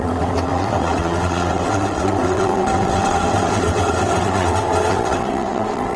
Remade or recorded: remade